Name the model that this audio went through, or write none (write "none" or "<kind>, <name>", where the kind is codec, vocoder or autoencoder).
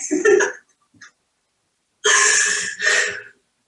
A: none